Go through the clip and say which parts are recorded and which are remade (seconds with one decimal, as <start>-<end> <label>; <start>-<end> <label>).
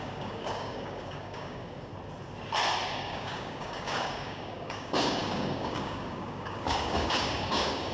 0.0-1.9 remade; 1.9-2.9 recorded; 2.9-7.9 remade